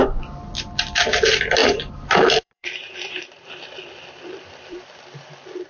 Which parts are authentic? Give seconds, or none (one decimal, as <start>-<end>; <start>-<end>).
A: 0.0-1.6; 3.5-5.7